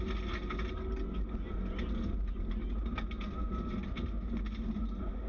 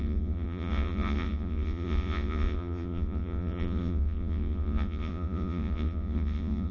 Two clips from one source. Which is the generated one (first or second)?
second